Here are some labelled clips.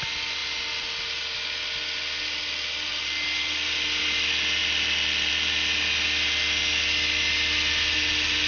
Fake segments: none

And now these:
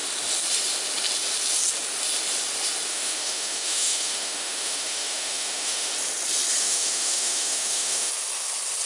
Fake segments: 2.9-5.9 (autoencoder, DAC-VAE); 6.6-8.1

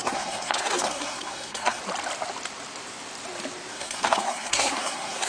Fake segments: 0.0-1.8 (codec, SNAC); 3.7-5.3

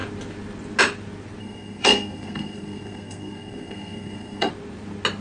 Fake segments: 1.4-4.5 (codec, SNAC)

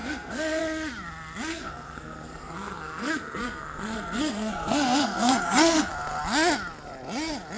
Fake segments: 0.0-0.6 (codec, SNAC); 1.5-5.9